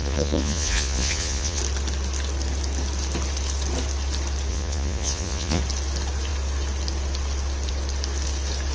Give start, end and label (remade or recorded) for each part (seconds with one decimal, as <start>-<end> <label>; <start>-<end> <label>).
0.0-1.6 remade; 1.6-4.5 recorded; 4.5-5.6 remade; 5.6-8.7 recorded